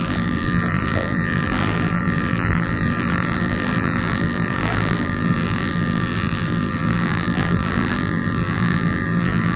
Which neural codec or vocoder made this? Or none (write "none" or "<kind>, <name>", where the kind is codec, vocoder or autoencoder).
vocoder, BigVGAN v2